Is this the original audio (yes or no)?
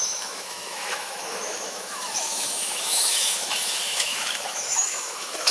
no